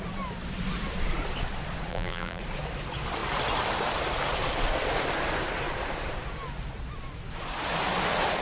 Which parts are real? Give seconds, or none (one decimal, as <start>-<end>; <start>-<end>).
0.0-1.9; 2.4-8.4